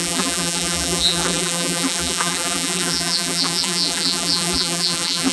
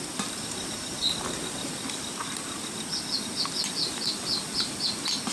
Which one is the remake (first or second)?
first